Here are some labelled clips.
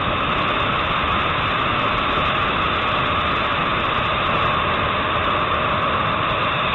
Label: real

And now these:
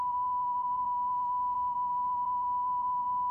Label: fake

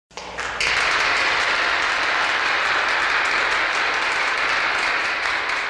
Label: real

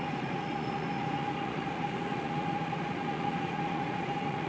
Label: fake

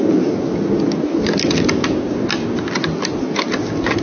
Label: real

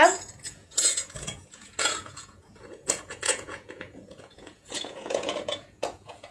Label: fake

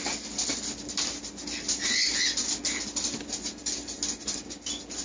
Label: real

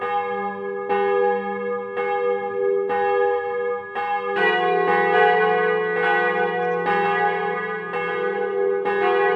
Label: real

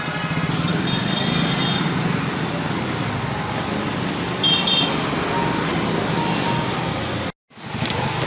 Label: real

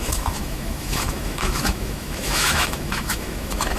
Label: fake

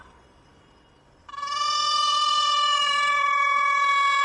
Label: fake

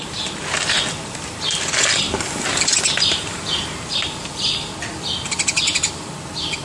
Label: real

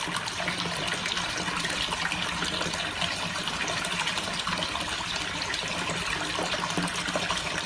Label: real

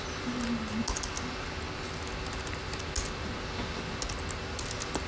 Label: real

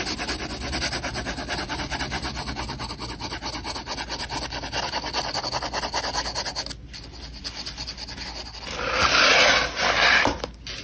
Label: real